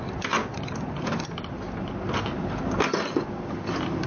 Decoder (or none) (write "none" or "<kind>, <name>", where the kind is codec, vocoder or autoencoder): none